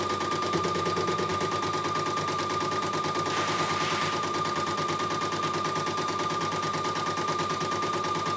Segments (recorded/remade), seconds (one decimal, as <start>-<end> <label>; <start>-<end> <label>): 0.0-8.4 recorded